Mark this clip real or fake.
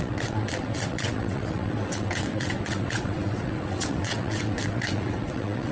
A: fake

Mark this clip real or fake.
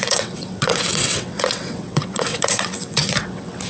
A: fake